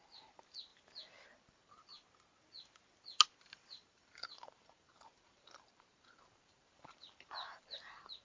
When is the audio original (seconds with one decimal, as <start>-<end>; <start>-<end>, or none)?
0.7-1.4; 1.9-3.5